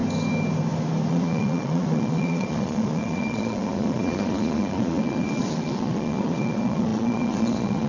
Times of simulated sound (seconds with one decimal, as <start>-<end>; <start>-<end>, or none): 1.1-7.9